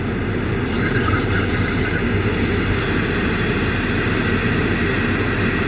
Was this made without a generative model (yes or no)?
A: yes